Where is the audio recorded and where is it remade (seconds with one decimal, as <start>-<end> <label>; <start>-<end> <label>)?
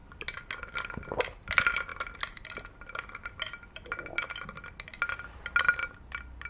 0.0-6.5 recorded